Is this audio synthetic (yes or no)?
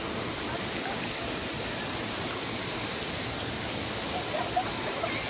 no